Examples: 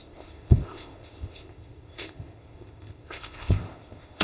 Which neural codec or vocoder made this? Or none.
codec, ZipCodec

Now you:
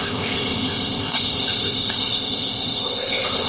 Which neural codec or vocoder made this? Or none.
codec, ZipCodec